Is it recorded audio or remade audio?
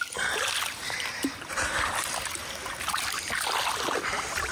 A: recorded